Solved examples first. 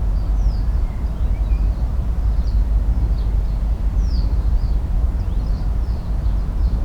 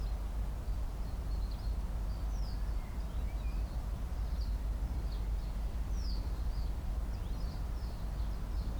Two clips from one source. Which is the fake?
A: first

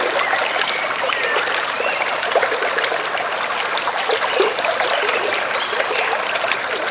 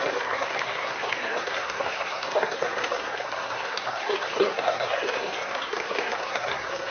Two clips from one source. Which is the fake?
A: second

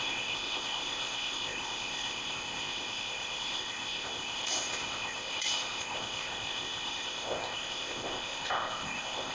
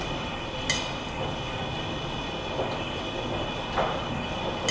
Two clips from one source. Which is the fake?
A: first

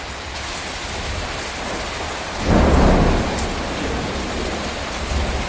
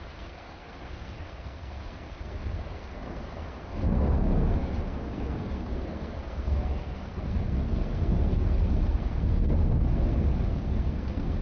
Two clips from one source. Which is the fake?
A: second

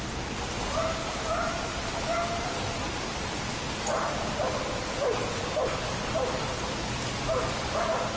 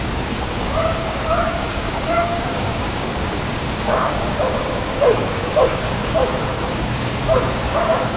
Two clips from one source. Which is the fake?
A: second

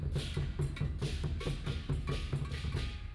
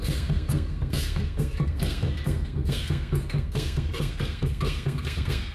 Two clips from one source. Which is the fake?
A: second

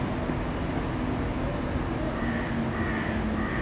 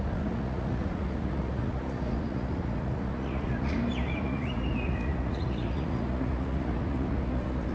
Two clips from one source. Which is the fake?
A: second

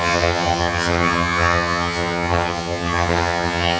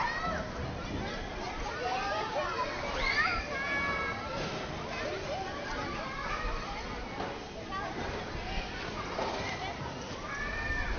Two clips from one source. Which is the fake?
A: first